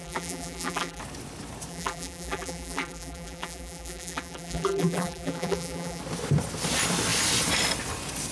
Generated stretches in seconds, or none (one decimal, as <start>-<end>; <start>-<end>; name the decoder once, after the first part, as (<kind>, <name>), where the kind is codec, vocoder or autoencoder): 0.0-1.0 (vocoder, BigVGAN v2); 1.7-6.0